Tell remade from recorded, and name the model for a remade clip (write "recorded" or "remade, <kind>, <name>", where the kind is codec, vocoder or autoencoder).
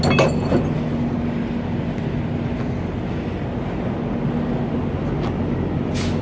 recorded